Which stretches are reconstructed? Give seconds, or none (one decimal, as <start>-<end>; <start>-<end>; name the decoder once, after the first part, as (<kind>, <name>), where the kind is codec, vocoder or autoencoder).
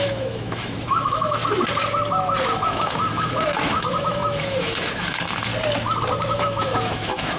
0.0-1.4 (autoencoder, DAC-VAE); 2.5-5.5; 6.3-7.4